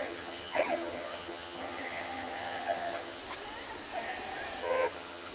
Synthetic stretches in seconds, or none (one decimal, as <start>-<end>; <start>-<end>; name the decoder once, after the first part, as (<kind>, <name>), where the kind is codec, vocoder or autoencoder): 0.0-3.2 (vocoder, HiFi-GAN); 4.6-5.3